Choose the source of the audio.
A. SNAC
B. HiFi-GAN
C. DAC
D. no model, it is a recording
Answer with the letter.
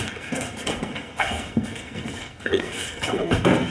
A